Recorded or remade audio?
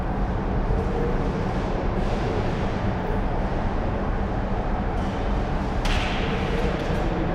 remade